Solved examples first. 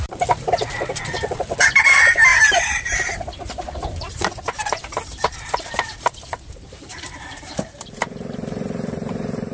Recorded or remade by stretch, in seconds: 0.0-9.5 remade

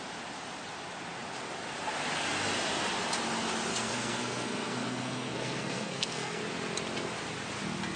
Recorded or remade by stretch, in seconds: 0.0-3.7 recorded; 3.7-6.4 remade; 6.4-8.0 recorded

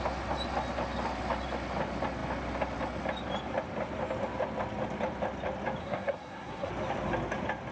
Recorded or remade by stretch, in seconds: 0.0-5.8 recorded; 5.8-6.7 remade; 6.7-7.7 recorded

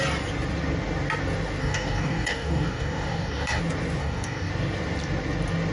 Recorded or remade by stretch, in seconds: 0.0-1.6 recorded; 1.6-3.6 remade; 3.6-4.0 recorded; 4.0-4.5 remade; 4.5-5.7 recorded

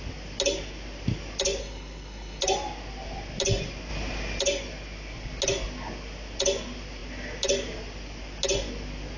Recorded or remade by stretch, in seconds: 0.0-1.6 recorded; 1.6-2.4 remade; 2.4-9.2 recorded

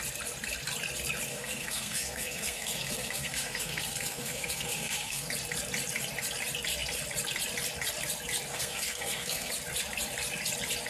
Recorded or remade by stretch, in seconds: 0.0-1.3 recorded; 1.3-5.3 remade; 5.3-8.5 recorded; 8.5-9.5 remade; 9.5-10.9 recorded

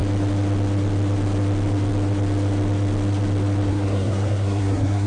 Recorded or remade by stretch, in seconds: 0.0-3.7 recorded; 3.7-5.1 remade

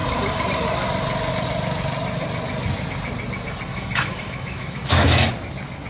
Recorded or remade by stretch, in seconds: 0.0-3.7 recorded; 3.7-5.3 remade; 5.3-5.9 recorded